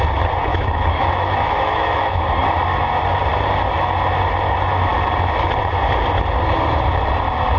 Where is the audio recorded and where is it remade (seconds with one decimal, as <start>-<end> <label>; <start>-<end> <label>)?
0.0-0.5 recorded; 0.5-2.2 remade; 2.2-7.6 recorded